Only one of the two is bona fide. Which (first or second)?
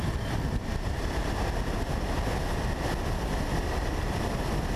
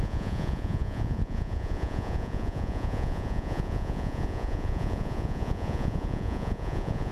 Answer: first